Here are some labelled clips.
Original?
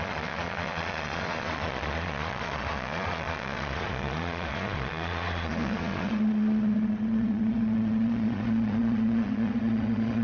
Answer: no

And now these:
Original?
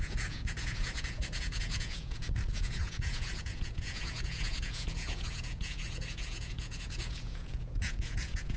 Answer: no